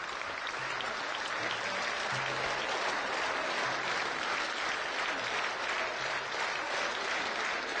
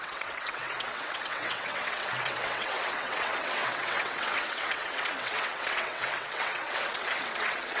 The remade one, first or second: second